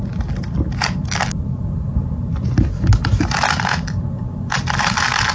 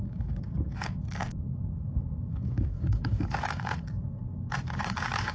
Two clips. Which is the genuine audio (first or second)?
first